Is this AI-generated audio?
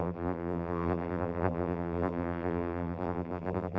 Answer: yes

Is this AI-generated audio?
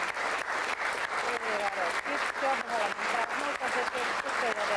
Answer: no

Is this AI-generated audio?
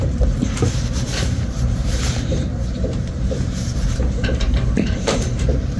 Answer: yes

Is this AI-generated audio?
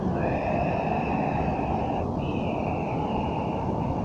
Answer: no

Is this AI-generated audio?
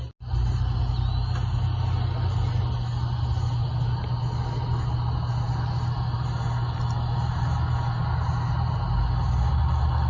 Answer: no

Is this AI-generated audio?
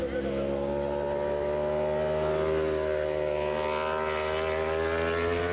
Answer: no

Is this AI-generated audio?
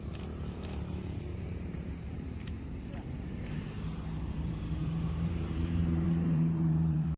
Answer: yes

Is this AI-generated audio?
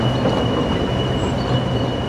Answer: no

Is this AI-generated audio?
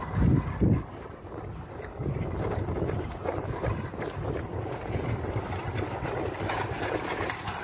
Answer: yes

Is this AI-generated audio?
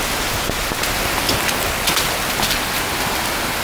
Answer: no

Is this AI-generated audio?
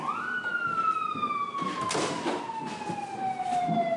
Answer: no